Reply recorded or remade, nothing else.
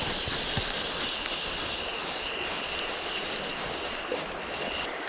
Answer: recorded